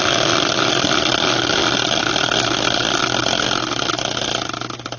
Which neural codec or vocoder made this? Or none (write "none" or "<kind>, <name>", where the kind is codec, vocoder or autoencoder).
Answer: none